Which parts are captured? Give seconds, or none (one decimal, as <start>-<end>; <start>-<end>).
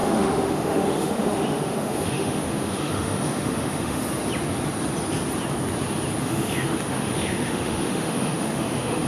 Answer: 4.0-6.2